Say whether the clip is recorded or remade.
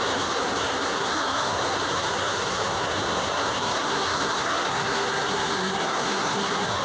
remade